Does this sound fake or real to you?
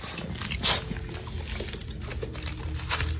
real